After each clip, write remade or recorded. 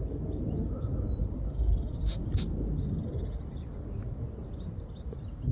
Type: recorded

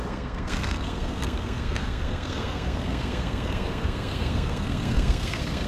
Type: remade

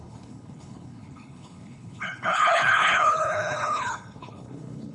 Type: remade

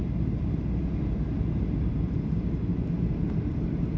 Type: remade